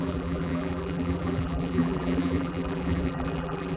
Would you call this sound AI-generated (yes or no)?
yes